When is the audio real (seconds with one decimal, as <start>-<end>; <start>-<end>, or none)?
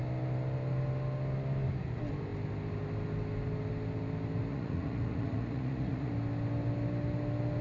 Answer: 0.0-4.5; 6.1-7.6